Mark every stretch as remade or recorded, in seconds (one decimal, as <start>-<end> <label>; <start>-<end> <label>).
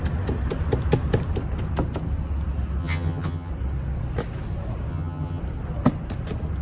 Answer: 0.0-2.8 recorded; 2.8-3.5 remade; 3.5-4.9 recorded; 4.9-5.4 remade; 5.4-6.6 recorded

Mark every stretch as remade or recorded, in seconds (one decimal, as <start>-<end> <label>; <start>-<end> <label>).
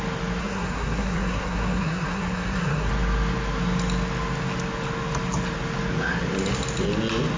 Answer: 0.0-0.4 recorded; 0.4-2.9 remade; 2.9-7.4 recorded